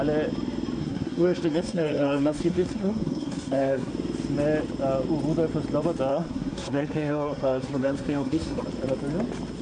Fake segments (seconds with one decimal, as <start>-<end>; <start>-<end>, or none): 0.8-3.9; 6.1-8.6